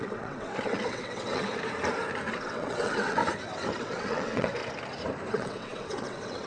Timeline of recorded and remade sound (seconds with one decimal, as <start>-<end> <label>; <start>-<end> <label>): 0.0-1.5 remade; 1.5-2.3 recorded; 2.3-3.2 remade; 3.2-3.8 recorded; 3.8-4.6 remade; 4.6-5.3 recorded; 5.3-6.5 remade